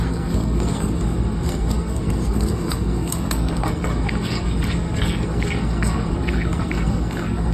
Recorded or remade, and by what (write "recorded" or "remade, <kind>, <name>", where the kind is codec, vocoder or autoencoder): remade, codec, SNAC